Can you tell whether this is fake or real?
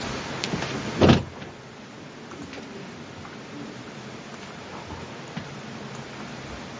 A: real